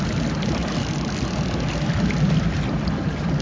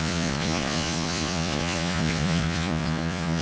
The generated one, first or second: second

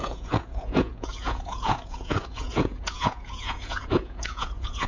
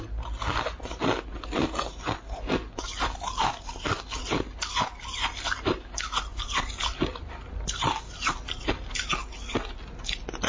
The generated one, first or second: first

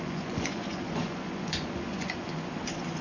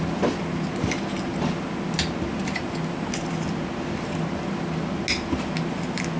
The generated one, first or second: first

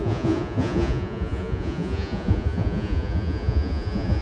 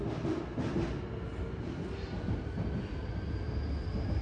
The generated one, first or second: first